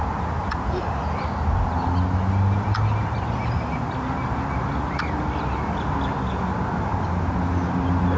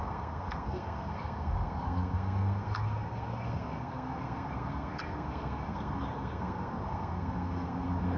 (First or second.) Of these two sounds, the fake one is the second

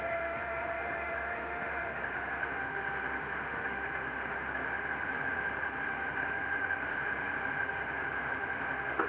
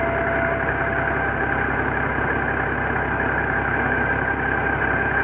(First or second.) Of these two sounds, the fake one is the first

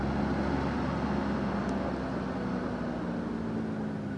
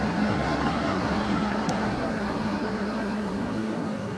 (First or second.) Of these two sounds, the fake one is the second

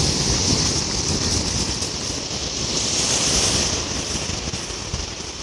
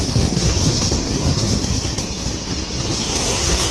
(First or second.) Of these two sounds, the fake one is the second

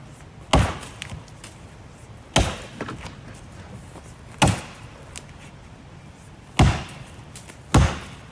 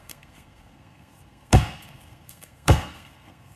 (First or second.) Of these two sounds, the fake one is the second